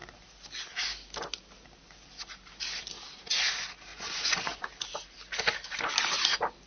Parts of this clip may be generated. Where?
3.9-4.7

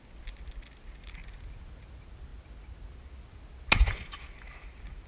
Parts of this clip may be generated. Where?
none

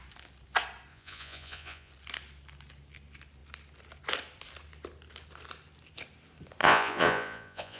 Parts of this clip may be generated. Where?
0.9-1.9; 6.6-7.8